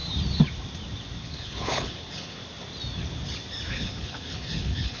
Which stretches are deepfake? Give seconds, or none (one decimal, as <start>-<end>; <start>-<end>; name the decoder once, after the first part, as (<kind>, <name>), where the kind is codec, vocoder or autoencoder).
1.2-2.4 (codec, HILCodec); 3.7-5.0